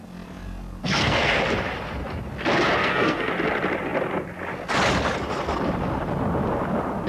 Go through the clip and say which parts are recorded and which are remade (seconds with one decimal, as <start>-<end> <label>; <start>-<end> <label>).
0.0-0.8 recorded; 0.8-1.4 remade; 1.4-2.8 recorded; 2.8-3.3 remade; 3.3-7.1 recorded